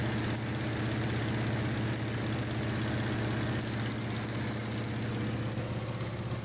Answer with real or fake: real